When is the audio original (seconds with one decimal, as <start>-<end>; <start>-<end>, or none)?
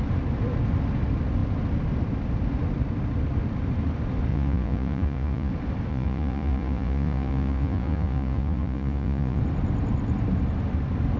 0.0-4.3; 5.5-5.9; 9.4-11.2